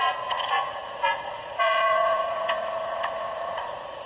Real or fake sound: fake